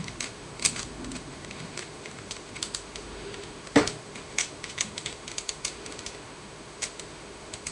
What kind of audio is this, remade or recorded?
remade